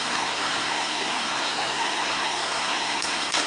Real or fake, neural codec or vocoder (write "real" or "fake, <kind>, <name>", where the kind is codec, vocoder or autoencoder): fake, codec, SNAC